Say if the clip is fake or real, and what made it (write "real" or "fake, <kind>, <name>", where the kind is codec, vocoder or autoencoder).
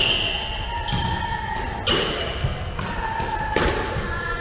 real